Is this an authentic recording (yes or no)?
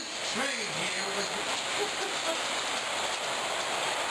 yes